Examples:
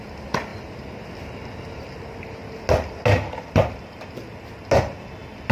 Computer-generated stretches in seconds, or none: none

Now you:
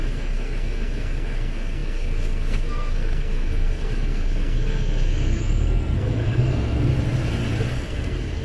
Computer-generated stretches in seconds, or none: 0.0-6.9 (codec, SNAC); 7.7-8.4

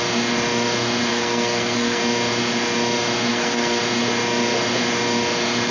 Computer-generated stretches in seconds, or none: 1.1-2.0 (codec, SNAC); 3.3-3.8

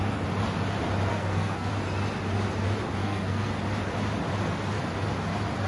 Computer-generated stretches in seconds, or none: 1.1-1.7 (codec, SNAC); 3.0-3.6

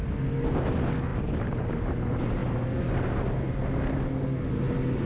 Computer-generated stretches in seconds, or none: none